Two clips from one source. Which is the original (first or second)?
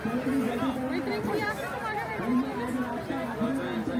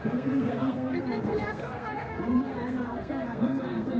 first